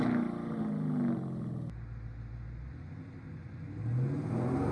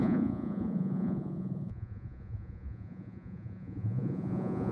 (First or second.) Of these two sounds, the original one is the first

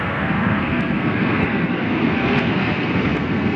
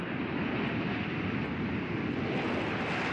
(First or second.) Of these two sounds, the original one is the second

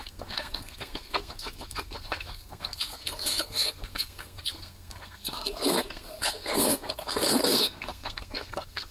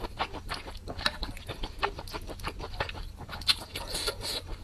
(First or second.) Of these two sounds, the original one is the second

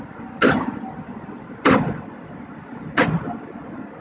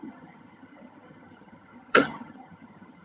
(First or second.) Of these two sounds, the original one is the first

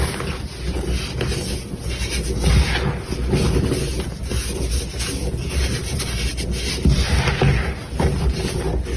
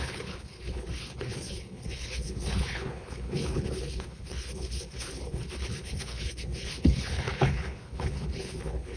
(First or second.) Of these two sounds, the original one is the first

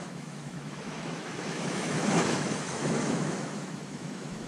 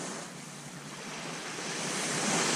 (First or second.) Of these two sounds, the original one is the second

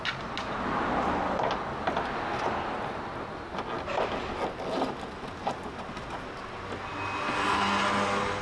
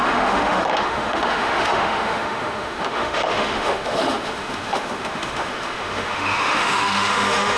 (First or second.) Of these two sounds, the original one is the first